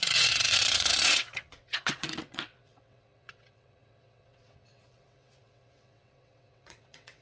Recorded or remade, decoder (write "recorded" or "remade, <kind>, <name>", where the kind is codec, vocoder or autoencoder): remade, vocoder, WaveNeXt